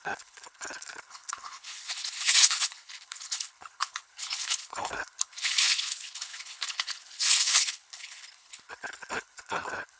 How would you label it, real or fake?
fake